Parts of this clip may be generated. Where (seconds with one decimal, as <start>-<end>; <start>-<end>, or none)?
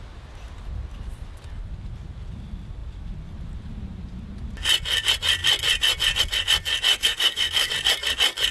6.9-7.7